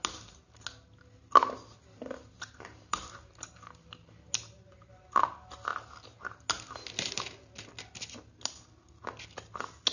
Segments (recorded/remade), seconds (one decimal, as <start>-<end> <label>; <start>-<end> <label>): 0.0-9.9 recorded